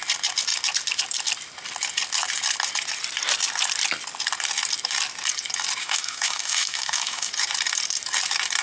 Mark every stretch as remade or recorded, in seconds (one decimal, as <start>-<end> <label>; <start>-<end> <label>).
0.0-5.8 recorded; 5.8-7.3 remade; 7.3-8.6 recorded